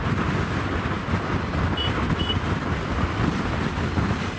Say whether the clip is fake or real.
real